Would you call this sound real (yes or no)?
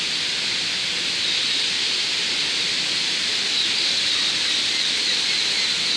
yes